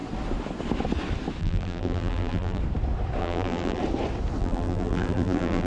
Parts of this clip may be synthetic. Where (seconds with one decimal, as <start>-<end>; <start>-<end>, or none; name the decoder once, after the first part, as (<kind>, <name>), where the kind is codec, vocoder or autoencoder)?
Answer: 1.4-2.6 (vocoder, BigVGAN v2); 3.2-3.8; 4.4-5.7